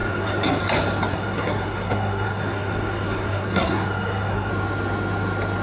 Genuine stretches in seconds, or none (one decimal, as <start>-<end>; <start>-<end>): 0.6-1.1; 4.5-5.6